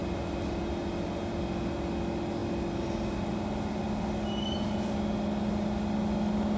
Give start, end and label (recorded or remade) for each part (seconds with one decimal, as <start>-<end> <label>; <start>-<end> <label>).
0.0-6.6 recorded